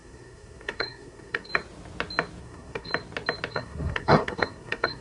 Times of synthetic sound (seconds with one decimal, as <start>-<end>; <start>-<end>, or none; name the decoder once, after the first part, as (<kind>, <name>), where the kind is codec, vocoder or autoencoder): 0.0-1.5 (codec, SNAC); 2.4-2.9; 3.5-5.0